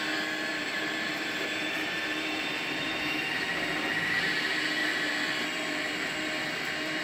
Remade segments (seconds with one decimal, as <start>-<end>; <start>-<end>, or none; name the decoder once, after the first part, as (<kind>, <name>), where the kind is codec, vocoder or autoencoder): 0.5-3.7 (vocoder, BigVGAN v2); 4.8-7.0